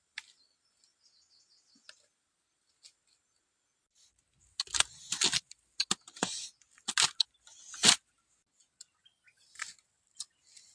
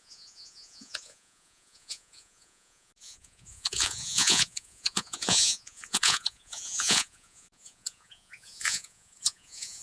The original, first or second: first